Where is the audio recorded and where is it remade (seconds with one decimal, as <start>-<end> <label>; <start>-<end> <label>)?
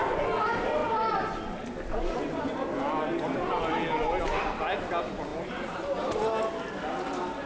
0.0-7.5 recorded